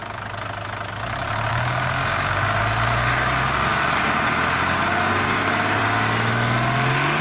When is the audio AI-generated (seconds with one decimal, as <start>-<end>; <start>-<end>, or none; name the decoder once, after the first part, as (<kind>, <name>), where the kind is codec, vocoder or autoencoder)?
1.5-5.8 (codec, DAC)